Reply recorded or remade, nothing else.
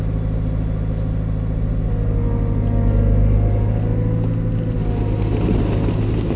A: recorded